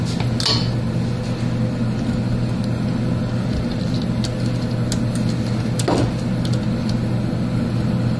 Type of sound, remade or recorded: recorded